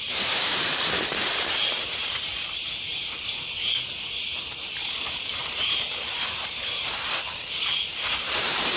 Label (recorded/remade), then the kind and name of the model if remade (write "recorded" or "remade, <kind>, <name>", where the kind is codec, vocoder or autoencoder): remade, vocoder, BigVGAN v2